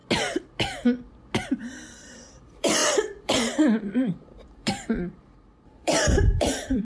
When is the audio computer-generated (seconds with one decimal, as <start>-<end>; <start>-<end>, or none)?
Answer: 1.7-6.8